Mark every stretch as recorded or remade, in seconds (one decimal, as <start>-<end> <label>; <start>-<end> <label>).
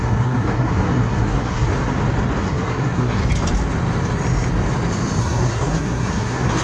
0.0-1.7 remade; 1.7-2.4 recorded; 2.4-3.2 remade; 3.2-5.2 recorded; 5.2-6.6 remade